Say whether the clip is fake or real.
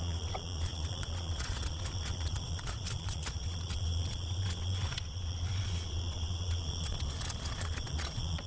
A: fake